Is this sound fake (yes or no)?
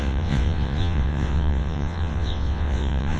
yes